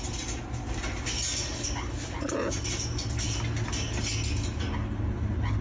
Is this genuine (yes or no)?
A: yes